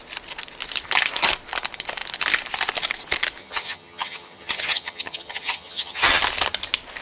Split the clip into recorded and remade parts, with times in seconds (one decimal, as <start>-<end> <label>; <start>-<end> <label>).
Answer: 0.0-3.4 recorded; 3.4-6.2 remade; 6.2-7.0 recorded